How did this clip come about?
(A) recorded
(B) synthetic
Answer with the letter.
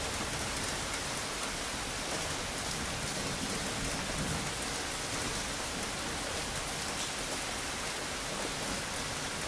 A